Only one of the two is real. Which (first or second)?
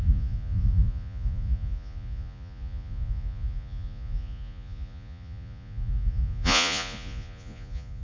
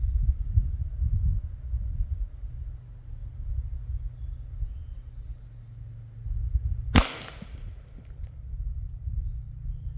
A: second